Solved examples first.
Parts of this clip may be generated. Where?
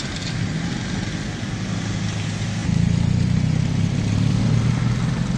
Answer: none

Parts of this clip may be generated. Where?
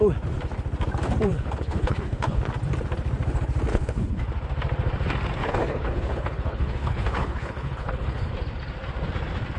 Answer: 1.3-2.4 (codec, HILCodec); 3.7-4.2; 5.4-8.3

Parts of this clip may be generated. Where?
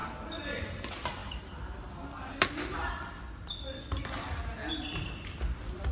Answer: none